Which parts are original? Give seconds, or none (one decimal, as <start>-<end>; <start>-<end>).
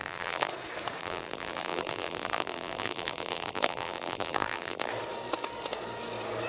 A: 0.5-1.0; 4.9-6.5